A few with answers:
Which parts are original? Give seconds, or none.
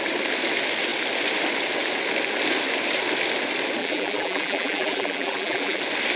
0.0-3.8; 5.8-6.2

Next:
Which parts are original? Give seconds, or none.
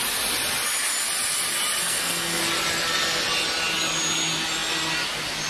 0.0-1.8; 2.4-5.5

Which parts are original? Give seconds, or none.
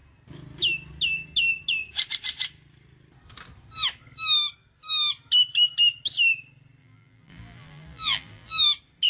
0.0-6.8; 8.7-9.1